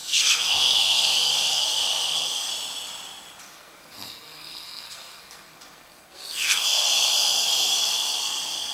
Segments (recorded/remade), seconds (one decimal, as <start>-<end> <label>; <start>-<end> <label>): 0.0-2.5 remade; 2.5-3.4 recorded; 3.4-8.7 remade